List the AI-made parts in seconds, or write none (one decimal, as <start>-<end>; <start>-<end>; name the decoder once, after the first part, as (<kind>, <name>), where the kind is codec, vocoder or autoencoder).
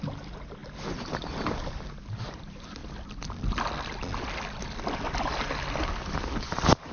none